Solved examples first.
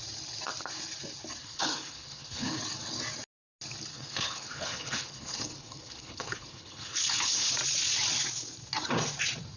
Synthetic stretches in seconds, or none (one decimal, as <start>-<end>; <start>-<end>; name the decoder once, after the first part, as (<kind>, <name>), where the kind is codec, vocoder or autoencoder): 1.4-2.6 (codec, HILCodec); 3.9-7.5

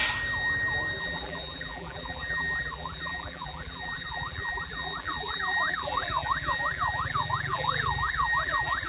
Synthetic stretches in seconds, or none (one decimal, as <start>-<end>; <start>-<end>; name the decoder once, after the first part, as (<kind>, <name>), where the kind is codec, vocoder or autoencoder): 1.0-8.9 (vocoder, BigVGAN v2)

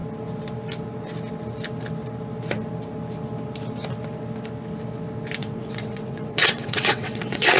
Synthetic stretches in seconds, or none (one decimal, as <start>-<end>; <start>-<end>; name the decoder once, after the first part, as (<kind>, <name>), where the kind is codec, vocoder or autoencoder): 5.4-7.6 (vocoder, WaveNeXt)

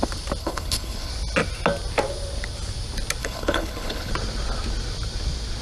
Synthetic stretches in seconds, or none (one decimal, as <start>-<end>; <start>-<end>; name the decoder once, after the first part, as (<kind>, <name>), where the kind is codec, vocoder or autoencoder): 0.4-1.1 (codec, HILCodec); 3.2-4.1

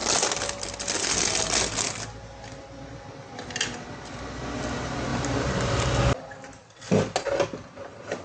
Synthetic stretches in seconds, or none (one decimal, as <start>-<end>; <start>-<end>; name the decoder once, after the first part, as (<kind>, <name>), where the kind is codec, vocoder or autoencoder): 5.1-5.8 (vocoder, BigVGAN v2)